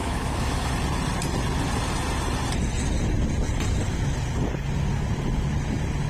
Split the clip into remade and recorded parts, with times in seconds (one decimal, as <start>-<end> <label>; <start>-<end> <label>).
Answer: 0.0-0.7 remade; 0.7-6.1 recorded